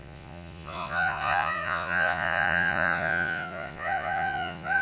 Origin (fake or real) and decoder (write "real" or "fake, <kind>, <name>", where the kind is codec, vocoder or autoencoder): fake, vocoder, Vocos